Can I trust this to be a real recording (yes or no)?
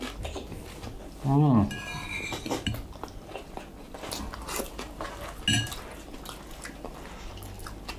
yes